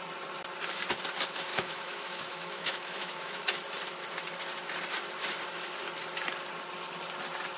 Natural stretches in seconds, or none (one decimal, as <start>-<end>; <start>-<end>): 0.0-1.5; 3.4-7.6